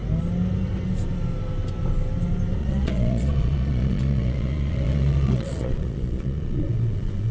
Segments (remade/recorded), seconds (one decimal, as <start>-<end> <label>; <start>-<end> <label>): 0.0-2.6 recorded; 2.6-7.3 remade